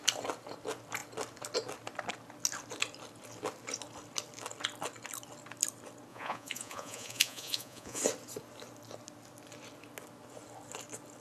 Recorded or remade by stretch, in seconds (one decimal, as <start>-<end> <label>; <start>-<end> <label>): 0.0-6.1 recorded; 6.1-8.0 remade; 8.0-11.2 recorded